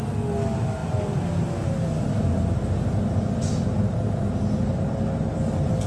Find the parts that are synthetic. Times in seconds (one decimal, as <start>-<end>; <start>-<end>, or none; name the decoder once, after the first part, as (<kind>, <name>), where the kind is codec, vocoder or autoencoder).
none